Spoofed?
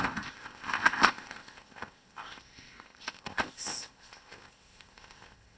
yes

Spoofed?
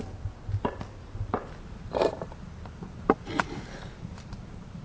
no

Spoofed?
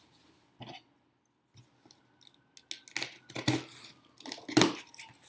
no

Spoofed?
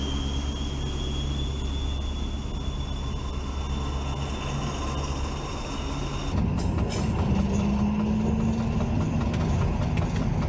no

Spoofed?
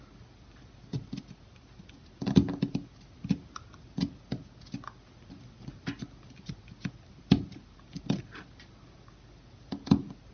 no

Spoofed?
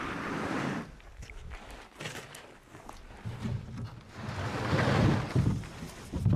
no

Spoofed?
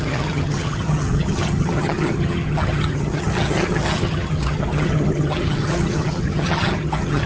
yes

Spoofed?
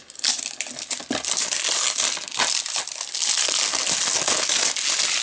no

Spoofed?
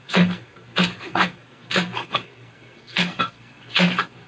yes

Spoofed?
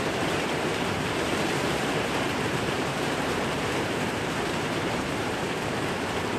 yes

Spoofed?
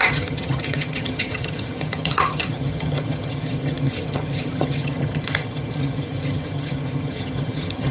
yes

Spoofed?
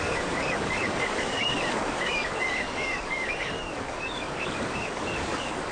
yes